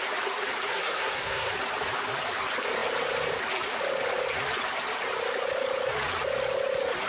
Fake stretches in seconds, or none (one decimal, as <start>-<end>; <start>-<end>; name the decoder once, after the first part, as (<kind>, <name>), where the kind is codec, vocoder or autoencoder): 0.7-1.5 (codec, SNAC)